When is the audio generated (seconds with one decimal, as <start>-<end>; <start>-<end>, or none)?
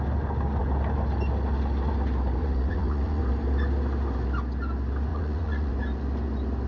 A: 2.4-3.2; 5.1-5.7